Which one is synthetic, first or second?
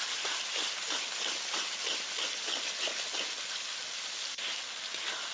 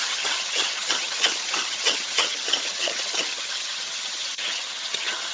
second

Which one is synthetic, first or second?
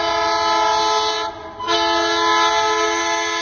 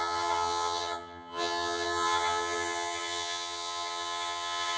second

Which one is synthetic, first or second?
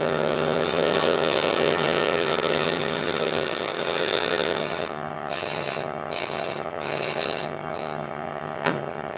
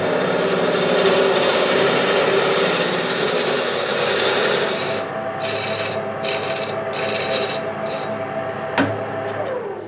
first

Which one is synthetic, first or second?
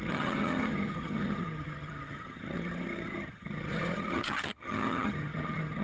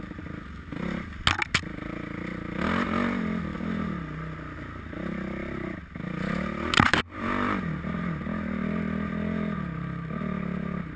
first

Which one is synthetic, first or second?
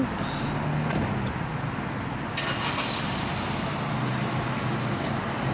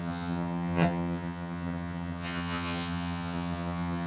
second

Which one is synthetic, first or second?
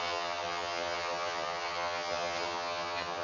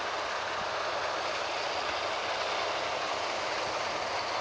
first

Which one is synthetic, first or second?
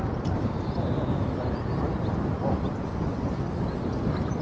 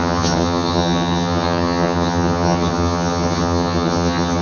second